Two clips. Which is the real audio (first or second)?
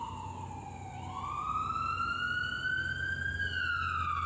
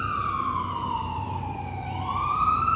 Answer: first